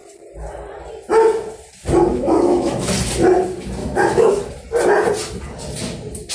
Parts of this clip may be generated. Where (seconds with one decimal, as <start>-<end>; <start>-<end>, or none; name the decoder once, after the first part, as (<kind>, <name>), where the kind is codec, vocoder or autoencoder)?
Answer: 2.1-2.9 (autoencoder, DAC-VAE); 3.8-4.5